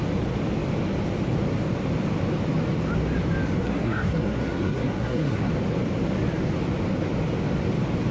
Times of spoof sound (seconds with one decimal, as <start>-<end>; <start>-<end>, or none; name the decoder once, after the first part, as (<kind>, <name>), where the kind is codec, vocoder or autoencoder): 3.6-5.5 (codec, SNAC)